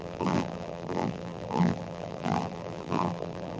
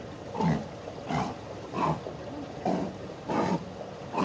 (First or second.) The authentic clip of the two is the second